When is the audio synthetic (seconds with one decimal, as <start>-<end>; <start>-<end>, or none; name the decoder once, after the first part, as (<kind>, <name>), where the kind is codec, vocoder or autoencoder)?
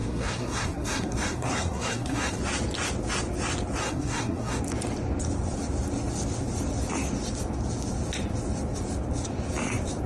0.0-2.4 (codec, SNAC); 3.8-4.6